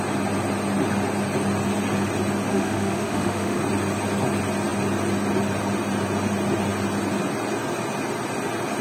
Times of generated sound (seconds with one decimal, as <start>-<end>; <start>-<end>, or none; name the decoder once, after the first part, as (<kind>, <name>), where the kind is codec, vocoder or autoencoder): 2.5-3.6 (autoencoder, DAC-VAE)